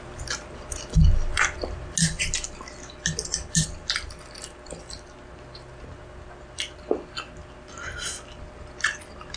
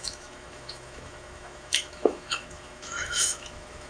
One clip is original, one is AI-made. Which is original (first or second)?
first